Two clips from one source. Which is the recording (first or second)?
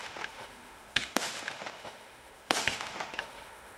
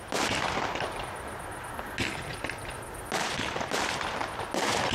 second